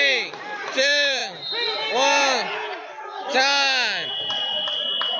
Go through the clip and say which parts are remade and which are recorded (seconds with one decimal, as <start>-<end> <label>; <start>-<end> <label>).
0.0-1.2 remade; 1.2-4.3 recorded; 4.3-5.2 remade